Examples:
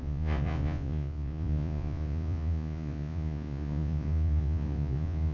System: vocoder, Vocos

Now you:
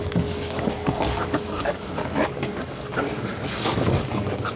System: codec, DAC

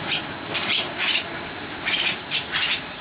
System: none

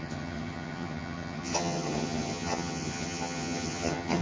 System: vocoder, HiFi-GAN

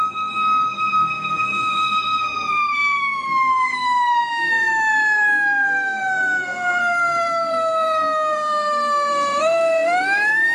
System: codec, SNAC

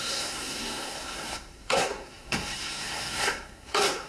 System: codec, SNAC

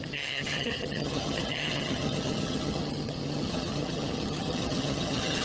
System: vocoder, HiFi-GAN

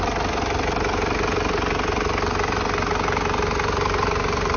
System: none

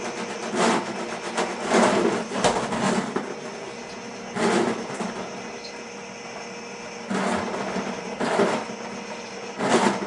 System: none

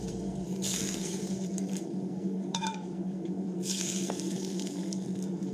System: codec, SNAC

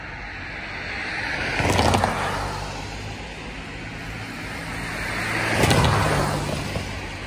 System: none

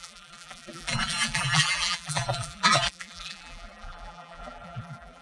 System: vocoder, BigVGAN v2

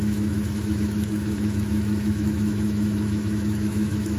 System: autoencoder, DAC-VAE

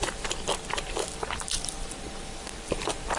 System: vocoder, BigVGAN v2